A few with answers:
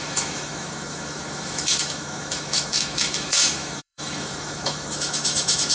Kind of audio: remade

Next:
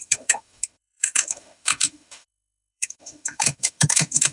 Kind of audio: remade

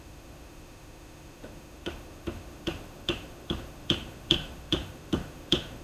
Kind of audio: remade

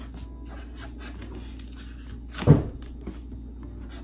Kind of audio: recorded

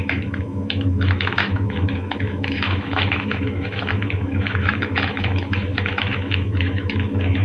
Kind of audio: remade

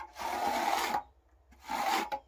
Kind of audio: recorded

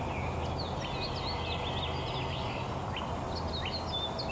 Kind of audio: recorded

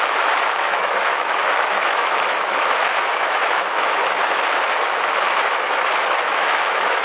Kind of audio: remade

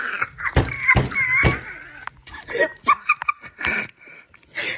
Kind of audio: recorded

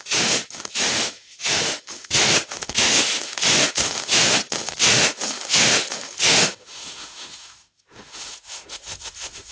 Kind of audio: remade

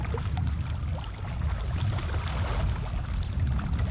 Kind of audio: recorded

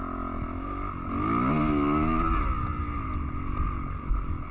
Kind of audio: recorded